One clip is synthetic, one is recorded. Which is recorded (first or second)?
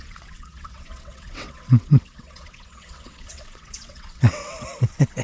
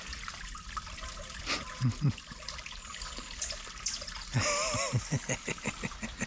second